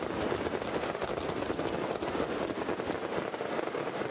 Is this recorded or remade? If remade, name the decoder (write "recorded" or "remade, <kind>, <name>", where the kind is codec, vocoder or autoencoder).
recorded